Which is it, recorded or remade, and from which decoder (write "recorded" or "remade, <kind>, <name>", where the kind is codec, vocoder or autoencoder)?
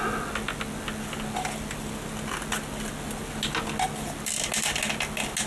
recorded